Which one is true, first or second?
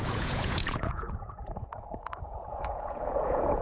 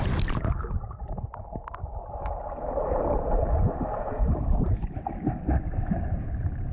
second